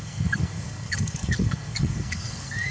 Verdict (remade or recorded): remade